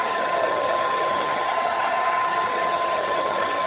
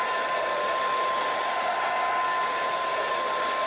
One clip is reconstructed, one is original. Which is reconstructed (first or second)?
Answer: first